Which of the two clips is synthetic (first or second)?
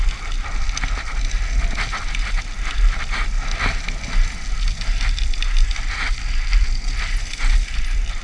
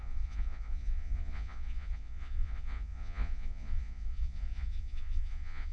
second